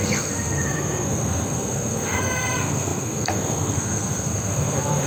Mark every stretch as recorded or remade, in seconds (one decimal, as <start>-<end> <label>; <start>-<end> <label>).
0.0-5.1 remade